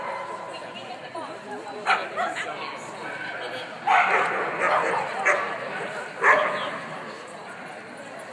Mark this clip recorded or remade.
recorded